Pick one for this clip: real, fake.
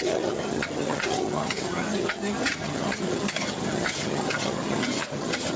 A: fake